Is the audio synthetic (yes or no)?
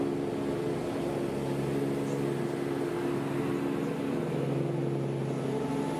no